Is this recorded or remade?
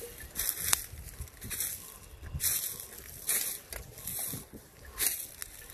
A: recorded